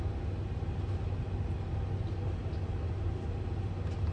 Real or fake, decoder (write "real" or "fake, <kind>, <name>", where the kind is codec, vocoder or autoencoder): real